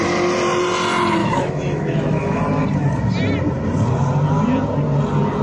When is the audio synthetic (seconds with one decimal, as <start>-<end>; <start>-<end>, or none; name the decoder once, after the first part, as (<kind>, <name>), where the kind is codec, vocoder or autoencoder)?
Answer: 1.2-2.4 (autoencoder, DAC-VAE)